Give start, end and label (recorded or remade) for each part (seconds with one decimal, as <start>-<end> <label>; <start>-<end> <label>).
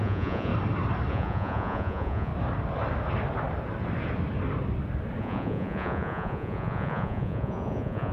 0.0-0.5 remade; 0.5-1.1 recorded; 1.1-2.3 remade; 2.3-5.2 recorded; 5.2-8.1 remade